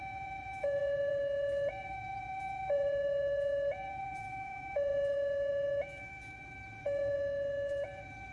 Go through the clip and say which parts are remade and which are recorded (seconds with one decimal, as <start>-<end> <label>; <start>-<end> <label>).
0.0-8.3 remade